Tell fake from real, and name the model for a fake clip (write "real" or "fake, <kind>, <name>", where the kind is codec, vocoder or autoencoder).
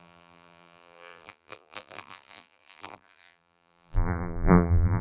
fake, vocoder, BigVGAN v2